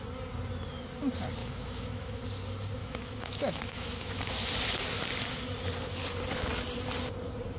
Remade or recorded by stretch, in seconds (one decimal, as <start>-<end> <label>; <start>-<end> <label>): 0.0-1.4 recorded; 1.4-2.2 remade; 2.2-2.8 recorded; 2.8-4.3 remade; 4.3-7.6 recorded